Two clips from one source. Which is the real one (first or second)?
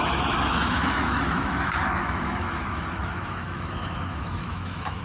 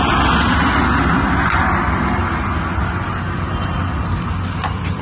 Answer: second